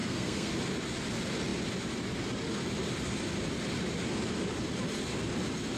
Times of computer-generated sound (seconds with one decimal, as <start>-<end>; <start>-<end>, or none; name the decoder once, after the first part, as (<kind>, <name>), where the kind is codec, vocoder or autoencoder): 0.0-0.5 (codec, SNAC)